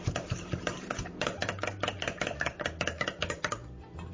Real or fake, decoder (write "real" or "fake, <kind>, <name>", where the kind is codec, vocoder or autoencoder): fake, vocoder, BigVGAN v2